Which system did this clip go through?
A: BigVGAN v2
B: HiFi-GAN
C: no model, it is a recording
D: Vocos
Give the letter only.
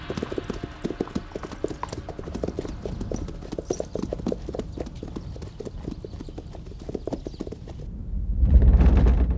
C